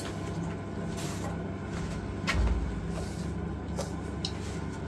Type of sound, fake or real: real